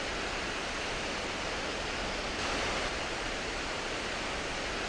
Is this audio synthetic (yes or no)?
no